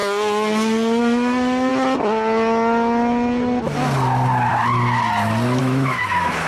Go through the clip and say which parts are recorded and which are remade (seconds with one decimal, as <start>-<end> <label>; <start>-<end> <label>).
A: 0.0-1.0 recorded; 1.0-1.7 remade; 1.7-5.6 recorded; 5.6-6.5 remade